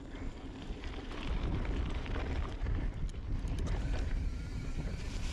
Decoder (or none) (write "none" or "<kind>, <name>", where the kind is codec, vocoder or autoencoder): vocoder, BigVGAN v2